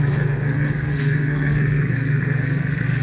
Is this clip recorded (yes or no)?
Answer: no